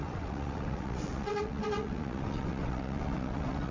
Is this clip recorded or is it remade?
remade